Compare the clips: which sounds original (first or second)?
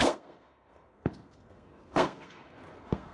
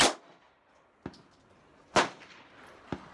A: second